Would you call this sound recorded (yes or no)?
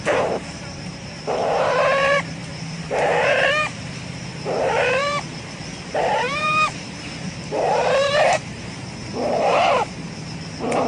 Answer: no